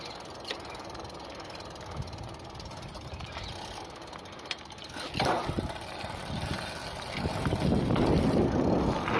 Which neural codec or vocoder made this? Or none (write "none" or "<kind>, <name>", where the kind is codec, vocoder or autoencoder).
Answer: none